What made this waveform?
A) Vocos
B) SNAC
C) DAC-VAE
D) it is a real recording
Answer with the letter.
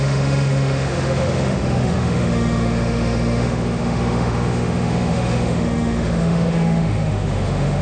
C